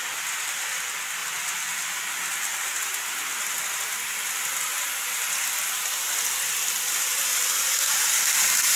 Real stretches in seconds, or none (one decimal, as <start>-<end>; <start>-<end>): 0.0-8.8